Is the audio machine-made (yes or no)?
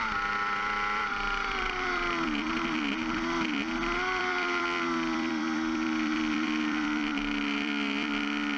yes